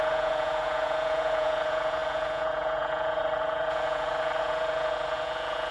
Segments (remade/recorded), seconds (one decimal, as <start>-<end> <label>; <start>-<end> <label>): 0.0-5.7 remade